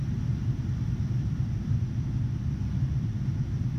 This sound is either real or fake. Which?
real